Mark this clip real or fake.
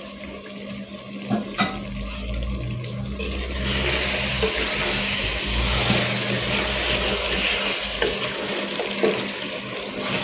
real